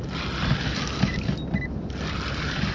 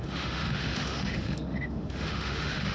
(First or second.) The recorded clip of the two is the first